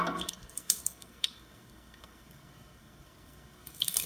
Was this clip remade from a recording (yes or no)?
yes